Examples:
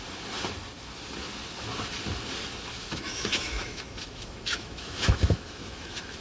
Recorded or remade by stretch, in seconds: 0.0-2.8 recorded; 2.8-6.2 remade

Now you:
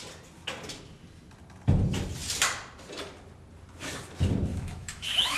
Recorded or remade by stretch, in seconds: 0.0-4.5 recorded; 4.5-5.4 remade

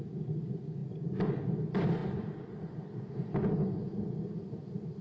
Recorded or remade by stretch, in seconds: 0.0-5.0 recorded

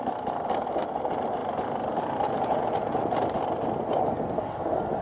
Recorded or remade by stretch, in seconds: 0.0-1.4 remade; 1.4-4.4 recorded; 4.4-5.0 remade

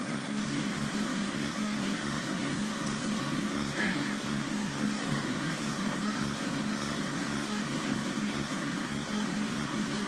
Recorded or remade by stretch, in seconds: 0.0-10.1 remade